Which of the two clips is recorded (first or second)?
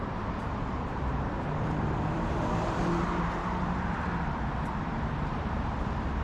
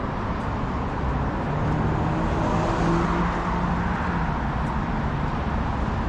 second